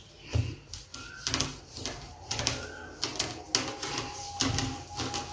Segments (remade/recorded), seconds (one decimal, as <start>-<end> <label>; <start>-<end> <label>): 0.0-5.3 recorded